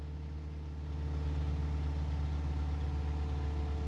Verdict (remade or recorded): recorded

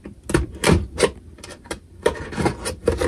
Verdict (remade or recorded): recorded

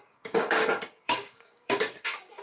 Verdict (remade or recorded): remade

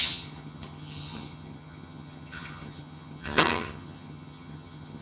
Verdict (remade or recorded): remade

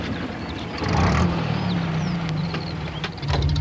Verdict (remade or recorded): recorded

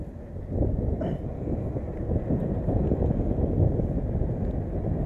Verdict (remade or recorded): recorded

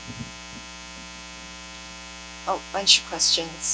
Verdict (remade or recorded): recorded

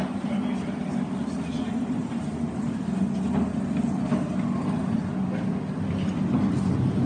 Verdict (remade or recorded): recorded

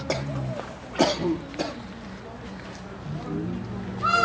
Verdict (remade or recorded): recorded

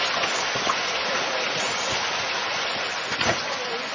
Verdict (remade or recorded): remade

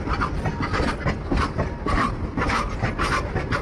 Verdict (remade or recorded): recorded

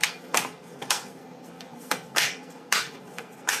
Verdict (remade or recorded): remade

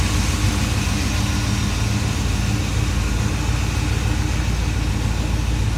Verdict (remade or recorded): recorded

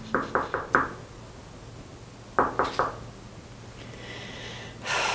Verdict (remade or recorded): recorded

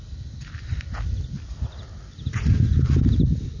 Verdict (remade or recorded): recorded